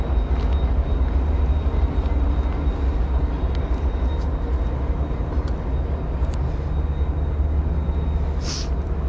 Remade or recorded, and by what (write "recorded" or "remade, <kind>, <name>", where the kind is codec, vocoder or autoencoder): recorded